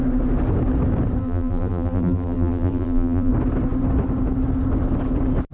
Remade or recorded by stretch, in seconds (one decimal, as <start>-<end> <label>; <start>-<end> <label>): 0.0-1.2 recorded; 1.2-3.3 remade; 3.3-5.5 recorded